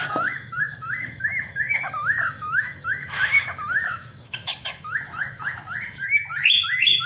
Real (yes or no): no